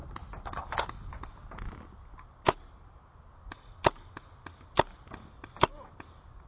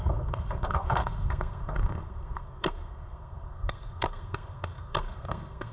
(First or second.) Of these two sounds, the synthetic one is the second